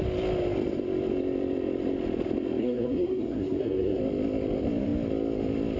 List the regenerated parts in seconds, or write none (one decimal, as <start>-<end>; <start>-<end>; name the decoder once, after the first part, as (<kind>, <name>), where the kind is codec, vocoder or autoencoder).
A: 2.6-4.0 (codec, SNAC)